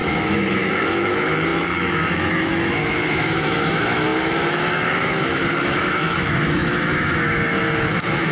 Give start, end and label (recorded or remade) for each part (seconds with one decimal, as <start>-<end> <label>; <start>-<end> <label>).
0.0-8.3 remade